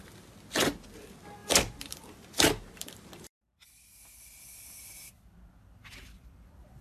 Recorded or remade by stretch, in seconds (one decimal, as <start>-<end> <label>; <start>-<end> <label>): 0.0-1.4 recorded; 1.4-5.2 remade; 5.2-5.8 recorded; 5.8-6.8 remade